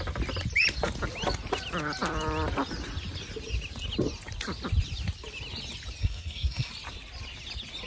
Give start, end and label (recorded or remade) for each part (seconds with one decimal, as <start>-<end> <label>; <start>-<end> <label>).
0.0-6.0 recorded; 6.0-6.7 remade; 6.7-7.9 recorded